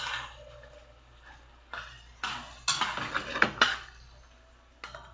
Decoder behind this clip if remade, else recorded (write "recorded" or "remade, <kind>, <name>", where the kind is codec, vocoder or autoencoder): recorded